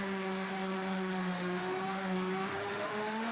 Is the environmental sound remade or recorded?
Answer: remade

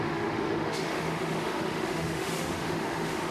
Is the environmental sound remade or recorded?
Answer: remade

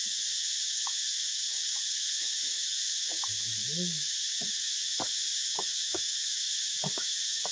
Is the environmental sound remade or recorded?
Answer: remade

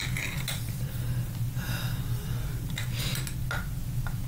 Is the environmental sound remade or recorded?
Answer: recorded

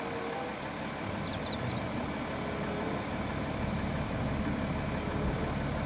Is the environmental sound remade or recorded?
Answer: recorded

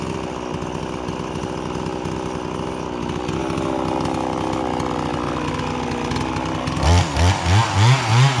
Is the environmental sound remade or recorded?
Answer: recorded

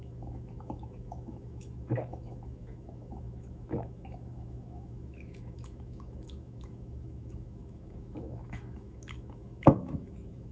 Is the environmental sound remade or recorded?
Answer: remade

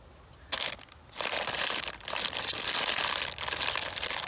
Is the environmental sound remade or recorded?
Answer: recorded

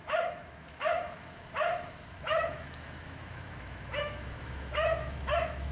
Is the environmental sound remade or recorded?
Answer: remade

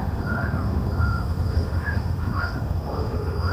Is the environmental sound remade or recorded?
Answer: remade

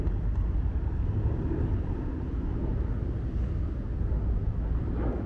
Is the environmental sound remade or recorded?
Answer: recorded